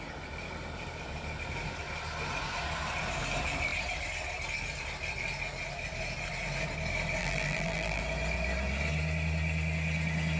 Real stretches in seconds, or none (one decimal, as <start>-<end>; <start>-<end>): 0.0-7.2; 8.0-10.4